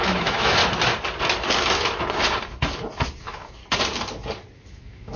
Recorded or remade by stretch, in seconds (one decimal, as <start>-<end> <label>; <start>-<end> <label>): 0.0-0.6 remade; 0.6-3.2 recorded; 3.2-3.6 remade; 3.6-4.6 recorded; 4.6-5.2 remade